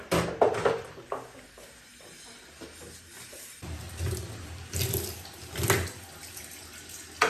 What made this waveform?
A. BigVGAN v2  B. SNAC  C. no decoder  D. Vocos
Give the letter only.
C